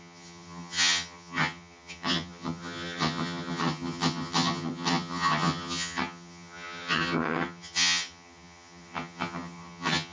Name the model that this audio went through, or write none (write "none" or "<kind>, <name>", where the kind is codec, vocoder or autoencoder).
vocoder, HiFi-GAN